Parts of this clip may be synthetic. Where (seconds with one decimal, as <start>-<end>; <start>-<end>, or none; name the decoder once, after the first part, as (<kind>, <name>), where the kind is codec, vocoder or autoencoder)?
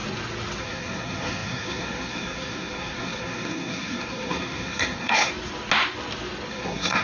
0.6-5.3 (codec, SNAC); 6.5-7.0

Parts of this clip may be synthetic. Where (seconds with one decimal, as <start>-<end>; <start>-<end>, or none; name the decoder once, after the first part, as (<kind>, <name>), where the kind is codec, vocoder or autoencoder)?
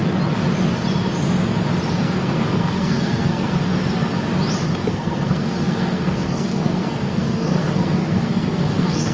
1.9-3.6 (codec, SNAC); 4.9-9.1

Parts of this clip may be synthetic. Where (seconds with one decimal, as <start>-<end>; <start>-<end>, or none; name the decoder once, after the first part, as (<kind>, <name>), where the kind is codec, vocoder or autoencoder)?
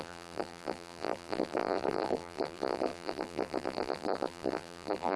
0.0-5.2 (vocoder, BigVGAN v2)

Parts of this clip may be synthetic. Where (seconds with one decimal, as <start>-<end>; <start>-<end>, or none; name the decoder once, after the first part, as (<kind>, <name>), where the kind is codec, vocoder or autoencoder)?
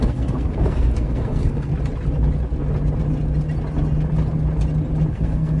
0.0-1.7 (codec, SNAC); 5.1-5.6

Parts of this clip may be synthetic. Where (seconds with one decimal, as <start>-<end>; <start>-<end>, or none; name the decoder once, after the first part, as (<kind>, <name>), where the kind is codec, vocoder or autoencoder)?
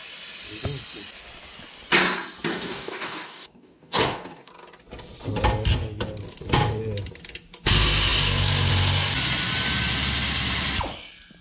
2.5-4.5 (codec, DAC)